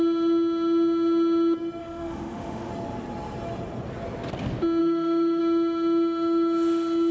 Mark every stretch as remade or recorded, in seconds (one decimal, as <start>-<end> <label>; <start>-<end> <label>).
0.0-1.8 recorded; 1.8-2.7 remade; 2.7-4.8 recorded; 4.8-5.4 remade; 5.4-7.1 recorded